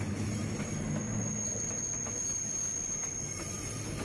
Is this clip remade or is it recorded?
recorded